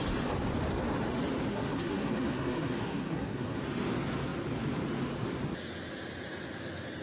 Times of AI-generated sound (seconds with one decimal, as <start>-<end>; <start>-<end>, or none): 1.5-3.6

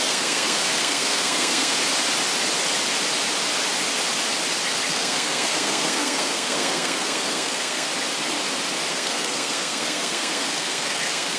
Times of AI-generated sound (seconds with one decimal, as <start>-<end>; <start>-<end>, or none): 0.0-1.8; 4.9-7.9; 8.9-11.4

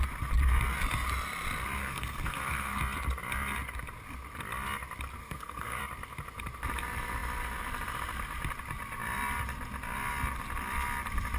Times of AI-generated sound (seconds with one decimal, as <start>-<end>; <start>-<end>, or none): 1.8-2.8; 5.2-5.8

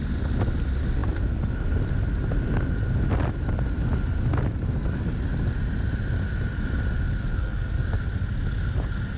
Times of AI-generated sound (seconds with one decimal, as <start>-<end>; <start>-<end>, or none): 7.3-8.0

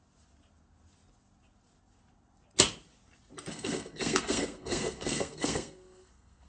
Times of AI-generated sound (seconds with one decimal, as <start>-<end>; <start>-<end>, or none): 3.5-6.5

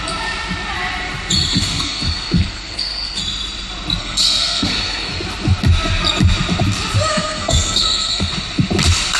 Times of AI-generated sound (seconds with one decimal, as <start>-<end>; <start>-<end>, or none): 1.5-3.2; 4.0-5.1; 7.1-8.3